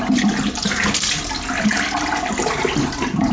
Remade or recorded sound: recorded